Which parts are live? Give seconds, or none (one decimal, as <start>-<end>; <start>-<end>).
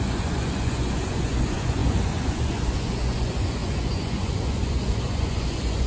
none